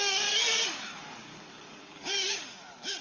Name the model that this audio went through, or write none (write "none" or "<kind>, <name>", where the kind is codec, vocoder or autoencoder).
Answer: codec, DAC